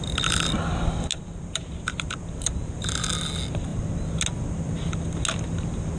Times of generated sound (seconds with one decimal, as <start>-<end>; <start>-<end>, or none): 1.1-2.9